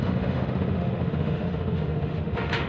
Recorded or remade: remade